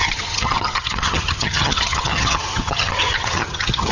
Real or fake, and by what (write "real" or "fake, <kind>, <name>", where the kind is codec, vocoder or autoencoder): fake, vocoder, HiFi-GAN